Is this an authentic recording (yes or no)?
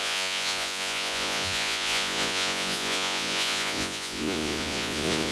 no